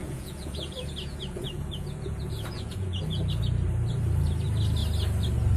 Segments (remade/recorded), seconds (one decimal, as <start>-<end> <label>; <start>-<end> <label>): 0.0-3.4 remade; 3.4-5.6 recorded